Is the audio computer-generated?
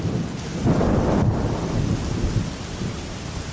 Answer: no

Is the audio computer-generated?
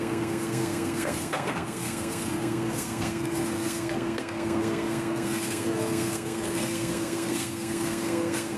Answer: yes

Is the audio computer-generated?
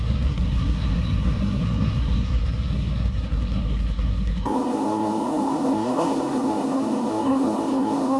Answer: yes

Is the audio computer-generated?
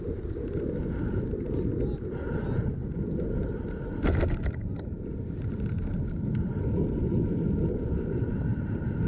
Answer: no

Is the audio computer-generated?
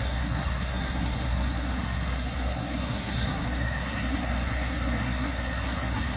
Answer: yes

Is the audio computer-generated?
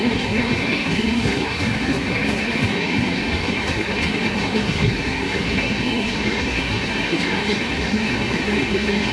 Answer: yes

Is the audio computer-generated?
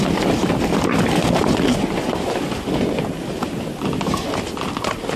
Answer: no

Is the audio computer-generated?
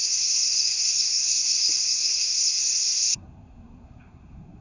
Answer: yes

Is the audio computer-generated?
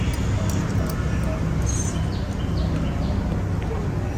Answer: no